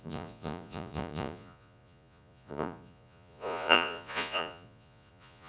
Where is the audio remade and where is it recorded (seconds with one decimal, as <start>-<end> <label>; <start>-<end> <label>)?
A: 0.0-5.5 remade